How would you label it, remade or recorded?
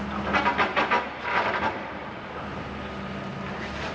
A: recorded